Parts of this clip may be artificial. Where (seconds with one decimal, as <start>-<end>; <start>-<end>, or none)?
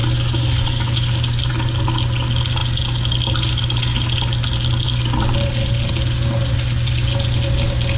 none